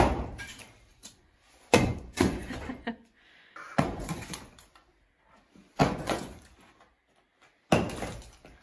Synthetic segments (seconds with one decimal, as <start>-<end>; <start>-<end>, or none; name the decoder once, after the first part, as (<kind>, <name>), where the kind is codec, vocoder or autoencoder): 0.9-4.9 (vocoder, Vocos); 5.8-6.4